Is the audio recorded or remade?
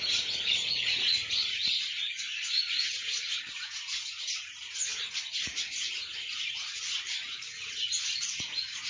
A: remade